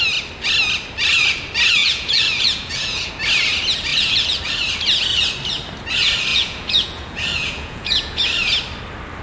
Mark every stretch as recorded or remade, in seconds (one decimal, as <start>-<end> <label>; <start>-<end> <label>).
0.0-1.8 recorded; 1.8-3.1 remade; 3.1-3.9 recorded; 3.9-4.4 remade; 4.4-6.3 recorded; 6.3-8.2 remade; 8.2-9.2 recorded